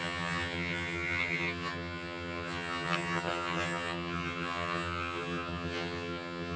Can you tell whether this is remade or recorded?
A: remade